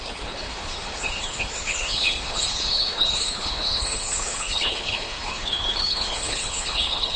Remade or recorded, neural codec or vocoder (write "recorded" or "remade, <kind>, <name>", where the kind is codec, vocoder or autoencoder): remade, codec, HILCodec